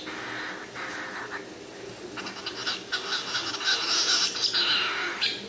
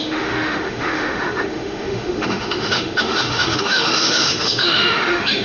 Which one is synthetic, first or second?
second